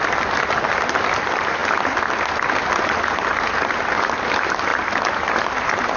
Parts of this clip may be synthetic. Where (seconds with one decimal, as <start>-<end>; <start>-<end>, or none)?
none